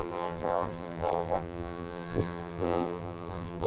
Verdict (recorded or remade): remade